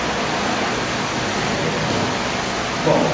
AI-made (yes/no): no